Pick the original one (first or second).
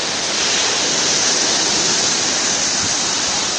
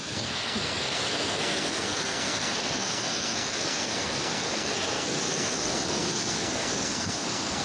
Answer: first